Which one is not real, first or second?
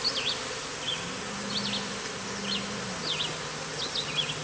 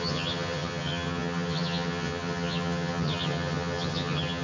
second